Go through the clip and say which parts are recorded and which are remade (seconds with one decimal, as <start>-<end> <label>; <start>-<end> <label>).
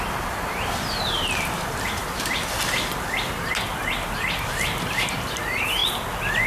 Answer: 0.0-2.0 remade; 2.0-3.9 recorded; 3.9-5.8 remade; 5.8-6.5 recorded